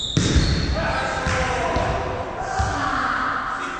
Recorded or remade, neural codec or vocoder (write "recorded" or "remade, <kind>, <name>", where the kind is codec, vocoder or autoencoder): recorded